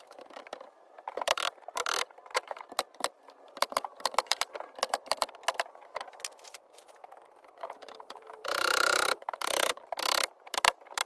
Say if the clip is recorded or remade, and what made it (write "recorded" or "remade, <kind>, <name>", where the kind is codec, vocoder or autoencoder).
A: remade, vocoder, BigVGAN v2